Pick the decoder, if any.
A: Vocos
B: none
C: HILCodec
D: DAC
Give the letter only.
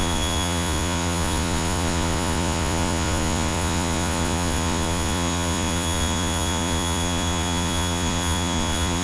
A